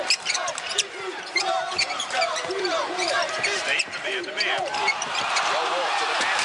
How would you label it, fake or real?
fake